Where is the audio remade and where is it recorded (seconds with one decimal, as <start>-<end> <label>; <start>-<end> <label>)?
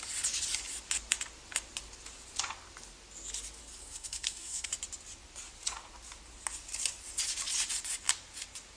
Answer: 0.0-3.8 recorded; 3.8-4.7 remade; 4.7-8.8 recorded